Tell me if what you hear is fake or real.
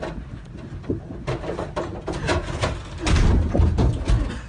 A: real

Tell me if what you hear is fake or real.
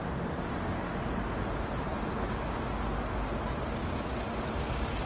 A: real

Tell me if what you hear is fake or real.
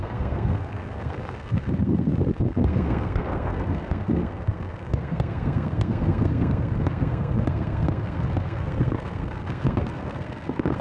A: fake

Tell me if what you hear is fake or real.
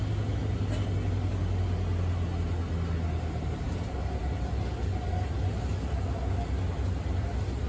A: real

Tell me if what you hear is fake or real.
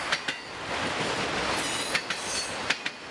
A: real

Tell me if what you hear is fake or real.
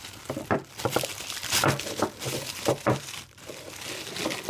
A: fake